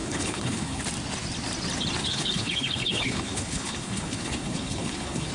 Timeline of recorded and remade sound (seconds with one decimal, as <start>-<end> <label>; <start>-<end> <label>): 0.0-0.8 remade; 0.8-2.0 recorded; 2.0-5.3 remade